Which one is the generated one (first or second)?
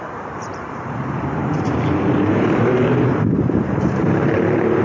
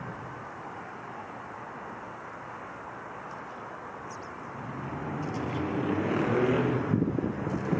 first